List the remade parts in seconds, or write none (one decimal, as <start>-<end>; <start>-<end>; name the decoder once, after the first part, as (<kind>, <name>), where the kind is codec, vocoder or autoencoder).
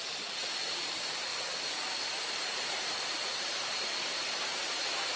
0.0-1.3 (vocoder, BigVGAN v2); 2.8-3.3; 4.5-5.2